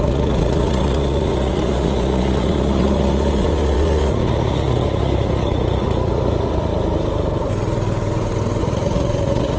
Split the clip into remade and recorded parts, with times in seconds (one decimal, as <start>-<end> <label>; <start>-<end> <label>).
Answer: 0.0-6.7 remade; 6.7-8.6 recorded; 8.6-9.6 remade